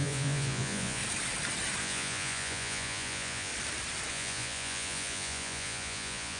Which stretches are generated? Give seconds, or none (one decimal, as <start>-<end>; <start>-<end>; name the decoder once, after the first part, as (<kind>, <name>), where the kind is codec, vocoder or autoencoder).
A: 0.0-1.0 (vocoder, Vocos); 1.8-3.5; 4.1-6.4